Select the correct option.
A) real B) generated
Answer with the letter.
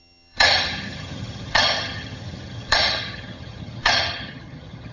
B